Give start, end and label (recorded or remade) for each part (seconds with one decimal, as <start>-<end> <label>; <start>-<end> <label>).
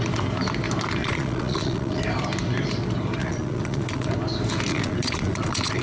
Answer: 0.0-1.0 recorded; 1.0-2.0 remade; 2.0-3.2 recorded; 3.2-4.1 remade; 4.1-4.7 recorded; 4.7-5.8 remade